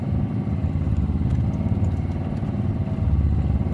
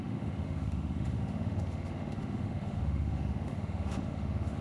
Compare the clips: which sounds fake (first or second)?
second